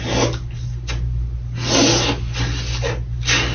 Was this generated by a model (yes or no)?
no